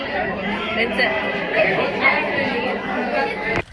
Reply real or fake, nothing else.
fake